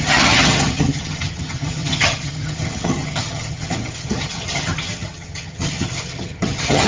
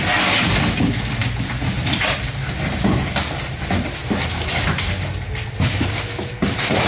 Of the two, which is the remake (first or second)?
first